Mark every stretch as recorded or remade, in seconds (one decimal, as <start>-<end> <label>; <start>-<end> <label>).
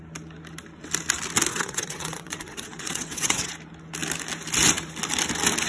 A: 0.0-1.5 recorded; 1.5-3.5 remade; 3.5-5.7 recorded